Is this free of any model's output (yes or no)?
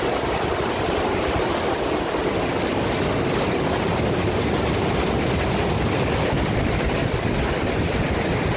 yes